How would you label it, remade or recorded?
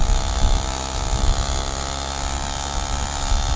recorded